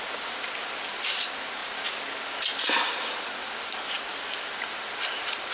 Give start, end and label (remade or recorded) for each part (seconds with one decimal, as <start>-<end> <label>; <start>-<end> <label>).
0.0-1.6 remade; 1.6-4.6 recorded; 4.6-5.5 remade